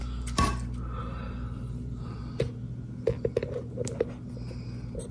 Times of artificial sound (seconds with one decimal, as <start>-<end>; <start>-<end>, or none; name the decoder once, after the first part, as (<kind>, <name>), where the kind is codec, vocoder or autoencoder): 1.0-2.2 (vocoder, BigVGAN v2)